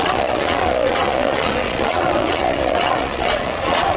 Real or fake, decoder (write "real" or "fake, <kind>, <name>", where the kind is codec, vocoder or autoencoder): fake, vocoder, Vocos